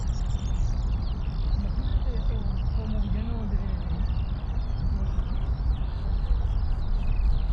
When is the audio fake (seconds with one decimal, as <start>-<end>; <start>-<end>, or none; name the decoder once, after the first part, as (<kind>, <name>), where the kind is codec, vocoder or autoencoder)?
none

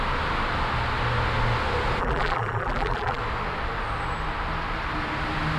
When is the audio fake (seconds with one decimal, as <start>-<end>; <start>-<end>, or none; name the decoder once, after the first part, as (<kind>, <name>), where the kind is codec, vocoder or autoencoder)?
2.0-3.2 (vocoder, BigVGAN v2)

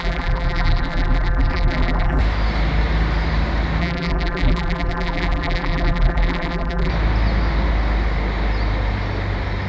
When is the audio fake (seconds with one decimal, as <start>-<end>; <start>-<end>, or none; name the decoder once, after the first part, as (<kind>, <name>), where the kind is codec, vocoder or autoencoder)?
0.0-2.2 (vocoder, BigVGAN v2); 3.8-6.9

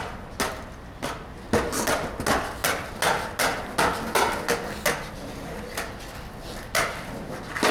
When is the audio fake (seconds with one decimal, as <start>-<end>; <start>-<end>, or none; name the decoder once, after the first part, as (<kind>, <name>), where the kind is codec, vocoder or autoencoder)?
none

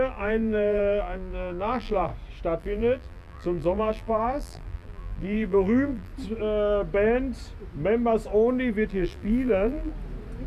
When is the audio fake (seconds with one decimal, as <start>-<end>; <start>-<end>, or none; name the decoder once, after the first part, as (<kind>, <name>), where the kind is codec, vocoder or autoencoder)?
0.0-2.1 (vocoder, BigVGAN v2); 2.6-6.1; 8.9-9.9

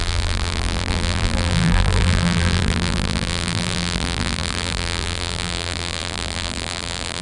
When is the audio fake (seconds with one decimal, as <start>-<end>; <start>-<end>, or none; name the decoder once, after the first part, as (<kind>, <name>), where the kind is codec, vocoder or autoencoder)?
0.0-7.2 (vocoder, BigVGAN v2)